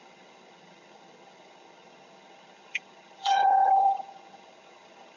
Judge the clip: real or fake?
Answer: fake